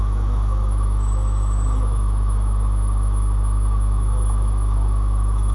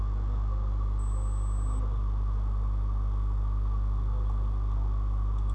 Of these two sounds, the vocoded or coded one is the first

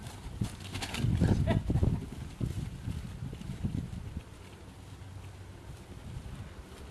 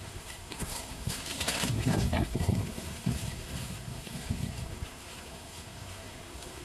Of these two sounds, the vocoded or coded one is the second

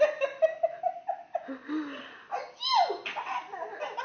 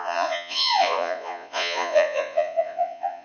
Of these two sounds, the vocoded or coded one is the second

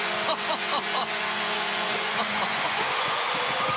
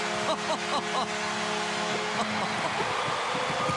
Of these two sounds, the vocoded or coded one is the first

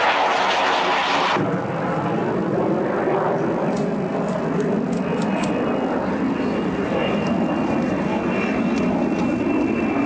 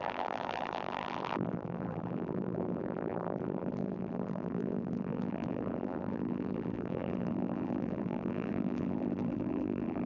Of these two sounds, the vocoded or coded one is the second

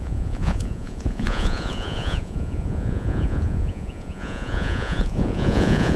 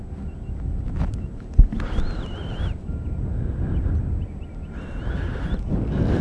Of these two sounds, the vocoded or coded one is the first